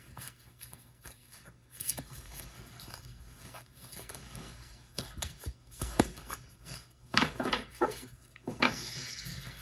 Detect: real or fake fake